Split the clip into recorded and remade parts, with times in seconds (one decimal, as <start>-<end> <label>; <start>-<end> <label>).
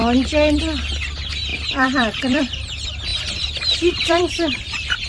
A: 0.0-1.5 recorded; 1.5-2.4 remade; 2.4-3.1 recorded; 3.1-4.2 remade; 4.2-5.1 recorded